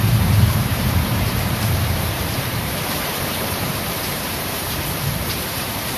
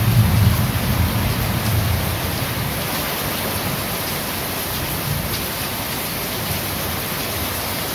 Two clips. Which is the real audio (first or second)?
second